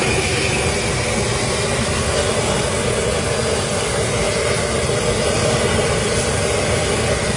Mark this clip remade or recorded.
recorded